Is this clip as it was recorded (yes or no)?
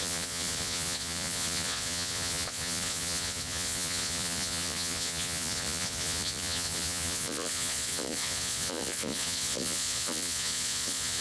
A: no